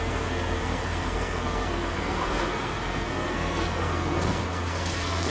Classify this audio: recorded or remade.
remade